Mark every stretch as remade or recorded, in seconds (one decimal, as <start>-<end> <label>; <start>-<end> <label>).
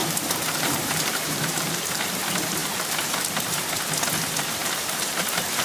0.0-2.0 remade; 2.0-2.6 recorded; 2.6-3.8 remade; 3.8-4.6 recorded; 4.6-5.6 remade